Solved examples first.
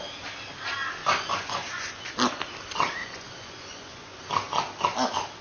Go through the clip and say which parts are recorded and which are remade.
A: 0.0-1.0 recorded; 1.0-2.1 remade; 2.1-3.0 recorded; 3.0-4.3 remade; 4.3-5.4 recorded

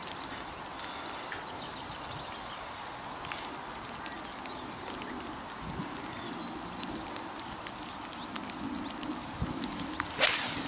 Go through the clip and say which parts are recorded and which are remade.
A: 0.0-10.7 recorded